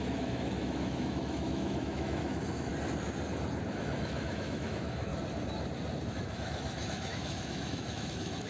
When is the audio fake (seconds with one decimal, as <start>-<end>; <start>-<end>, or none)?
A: 0.0-2.7; 3.7-5.1; 6.1-8.5